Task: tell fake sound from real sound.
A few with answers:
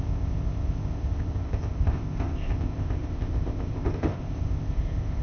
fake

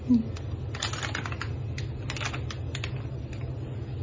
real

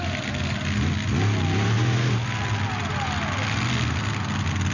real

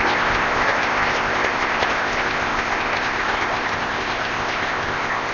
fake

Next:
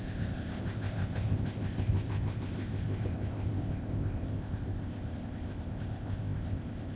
fake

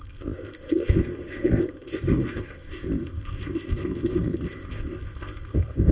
fake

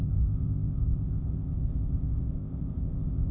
fake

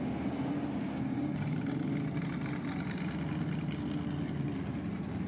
real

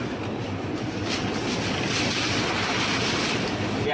real